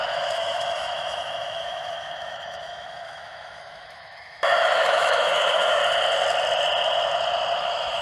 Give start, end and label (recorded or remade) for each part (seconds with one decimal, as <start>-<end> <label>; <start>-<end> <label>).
0.0-5.8 remade; 5.8-7.6 recorded; 7.6-8.0 remade